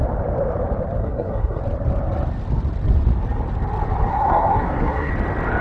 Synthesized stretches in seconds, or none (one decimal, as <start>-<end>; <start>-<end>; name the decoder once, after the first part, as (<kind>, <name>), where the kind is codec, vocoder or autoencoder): 1.0-1.6 (codec, SNAC); 4.1-5.1